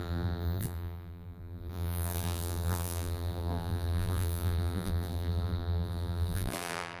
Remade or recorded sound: remade